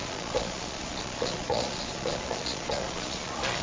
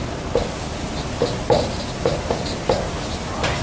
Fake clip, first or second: first